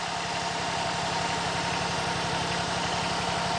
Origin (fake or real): fake